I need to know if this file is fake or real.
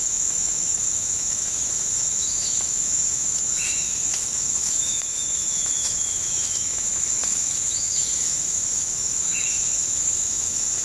fake